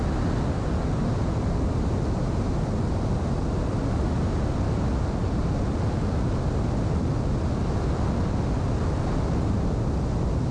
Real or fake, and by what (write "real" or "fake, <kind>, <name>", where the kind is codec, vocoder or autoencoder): real